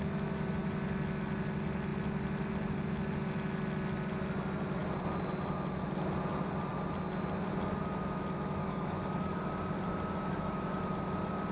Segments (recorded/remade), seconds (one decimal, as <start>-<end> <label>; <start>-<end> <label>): 0.0-8.6 recorded; 8.6-9.5 remade; 9.5-11.5 recorded